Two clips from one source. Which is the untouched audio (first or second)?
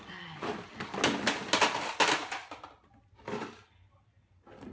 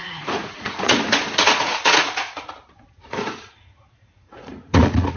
first